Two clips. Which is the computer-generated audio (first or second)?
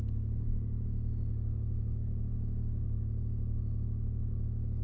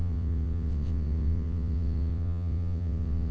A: second